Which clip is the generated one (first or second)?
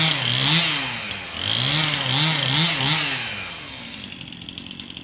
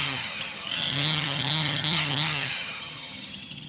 second